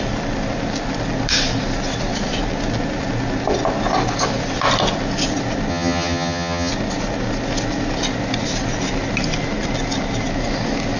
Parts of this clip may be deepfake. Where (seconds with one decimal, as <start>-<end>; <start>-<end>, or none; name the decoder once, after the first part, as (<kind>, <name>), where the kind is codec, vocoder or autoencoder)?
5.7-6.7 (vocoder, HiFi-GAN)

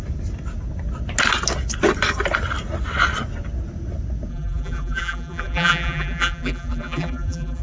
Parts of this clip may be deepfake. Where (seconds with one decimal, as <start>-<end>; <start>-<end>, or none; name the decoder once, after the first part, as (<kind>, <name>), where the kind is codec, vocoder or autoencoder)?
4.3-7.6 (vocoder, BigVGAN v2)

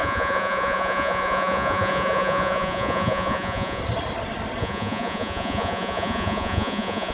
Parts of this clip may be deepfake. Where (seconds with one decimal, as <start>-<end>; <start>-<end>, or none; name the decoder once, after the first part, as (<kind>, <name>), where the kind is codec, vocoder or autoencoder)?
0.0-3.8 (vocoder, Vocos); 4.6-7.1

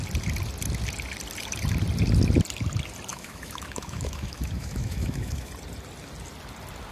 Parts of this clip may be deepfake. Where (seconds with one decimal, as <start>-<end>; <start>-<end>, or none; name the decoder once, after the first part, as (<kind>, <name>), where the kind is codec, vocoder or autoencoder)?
3.1-5.5 (autoencoder, DAC-VAE)

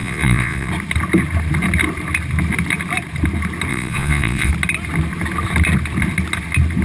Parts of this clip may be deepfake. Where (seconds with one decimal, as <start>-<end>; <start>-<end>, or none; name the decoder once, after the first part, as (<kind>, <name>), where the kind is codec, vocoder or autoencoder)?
0.0-0.7 (vocoder, Vocos); 3.7-4.5

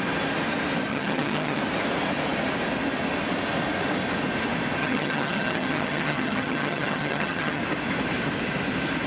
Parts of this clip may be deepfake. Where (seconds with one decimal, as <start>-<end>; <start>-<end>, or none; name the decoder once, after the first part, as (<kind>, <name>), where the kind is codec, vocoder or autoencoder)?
0.9-1.6 (vocoder, HiFi-GAN); 4.8-7.6

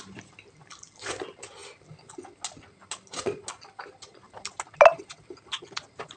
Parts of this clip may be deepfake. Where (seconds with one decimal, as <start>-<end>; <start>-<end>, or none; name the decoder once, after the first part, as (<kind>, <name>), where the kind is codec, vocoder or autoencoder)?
none

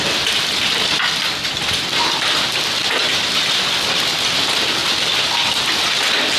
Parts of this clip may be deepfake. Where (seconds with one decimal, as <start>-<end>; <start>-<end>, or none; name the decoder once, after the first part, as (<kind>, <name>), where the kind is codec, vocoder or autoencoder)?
none